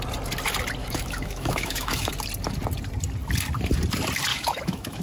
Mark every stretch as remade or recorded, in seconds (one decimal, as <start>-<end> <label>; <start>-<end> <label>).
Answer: 0.0-0.8 recorded; 0.8-2.1 remade; 2.1-4.3 recorded; 4.3-5.0 remade